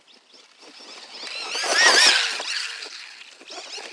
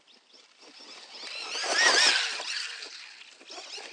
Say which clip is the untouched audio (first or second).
first